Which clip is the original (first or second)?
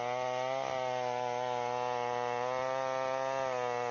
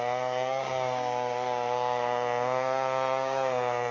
first